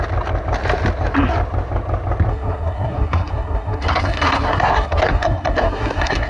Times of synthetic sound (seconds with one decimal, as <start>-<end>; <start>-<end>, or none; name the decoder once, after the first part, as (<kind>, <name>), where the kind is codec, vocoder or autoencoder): 2.3-6.3 (codec, SNAC)